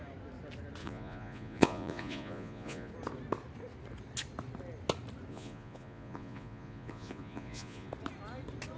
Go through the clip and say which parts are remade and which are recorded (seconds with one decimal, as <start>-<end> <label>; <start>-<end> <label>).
0.0-0.8 recorded; 0.8-2.9 remade; 2.9-5.3 recorded; 5.3-7.9 remade; 7.9-8.8 recorded